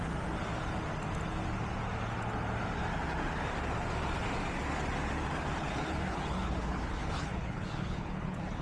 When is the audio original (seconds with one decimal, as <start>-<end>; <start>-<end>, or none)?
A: 0.0-5.6